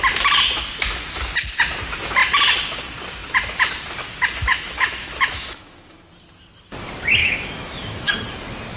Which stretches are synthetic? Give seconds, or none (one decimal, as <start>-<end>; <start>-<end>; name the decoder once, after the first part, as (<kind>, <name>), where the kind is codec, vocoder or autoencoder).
4.5-6.1 (autoencoder, DAC-VAE); 7.2-8.1